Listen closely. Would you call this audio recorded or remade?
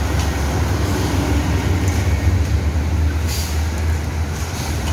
recorded